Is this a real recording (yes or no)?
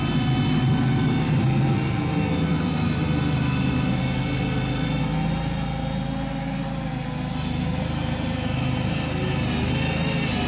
yes